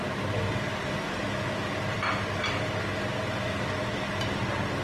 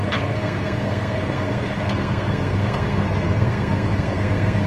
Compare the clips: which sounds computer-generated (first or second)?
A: second